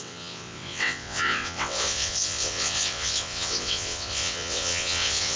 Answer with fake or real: fake